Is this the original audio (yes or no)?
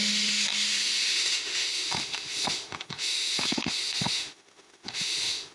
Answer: no